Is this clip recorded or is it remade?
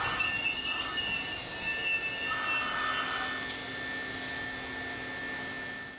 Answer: recorded